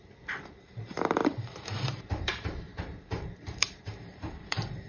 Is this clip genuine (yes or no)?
no